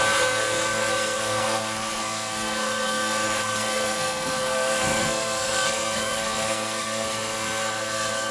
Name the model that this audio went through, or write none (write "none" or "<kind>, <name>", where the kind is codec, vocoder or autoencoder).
codec, SNAC